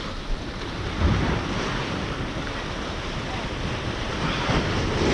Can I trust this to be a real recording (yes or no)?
yes